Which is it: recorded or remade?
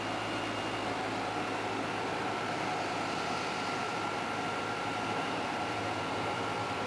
remade